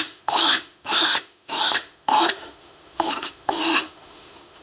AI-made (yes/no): yes